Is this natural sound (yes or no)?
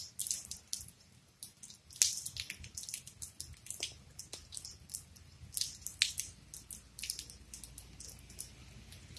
yes